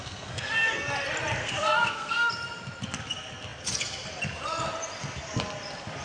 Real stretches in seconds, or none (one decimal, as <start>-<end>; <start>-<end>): 0.7-1.4; 2.3-6.0